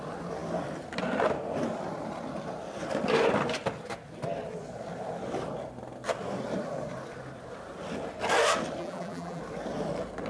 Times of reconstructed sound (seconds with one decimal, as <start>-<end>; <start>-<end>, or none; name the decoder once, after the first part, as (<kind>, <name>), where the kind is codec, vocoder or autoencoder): 8.8-9.4 (vocoder, BigVGAN v2)